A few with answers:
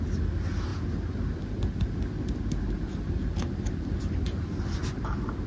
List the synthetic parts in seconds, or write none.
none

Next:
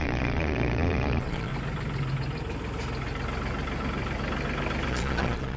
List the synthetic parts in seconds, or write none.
0.0-1.5 (vocoder, Vocos); 4.9-5.6

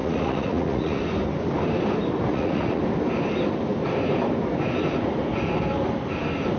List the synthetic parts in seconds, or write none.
0.0-1.0 (vocoder, Vocos); 2.3-2.8

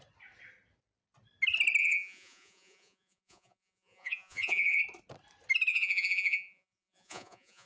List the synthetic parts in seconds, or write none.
1.8-4.8 (vocoder, Vocos); 5.7-7.7

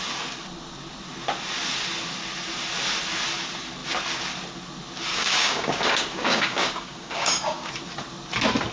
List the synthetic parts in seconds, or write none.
5.1-7.7 (codec, DAC)